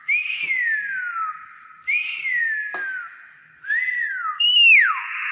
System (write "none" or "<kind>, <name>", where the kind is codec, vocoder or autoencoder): none